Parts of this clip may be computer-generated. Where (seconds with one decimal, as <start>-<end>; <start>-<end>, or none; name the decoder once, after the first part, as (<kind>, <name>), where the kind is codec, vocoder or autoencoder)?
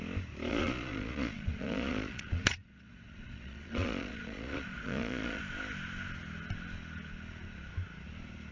0.5-5.4 (vocoder, Vocos)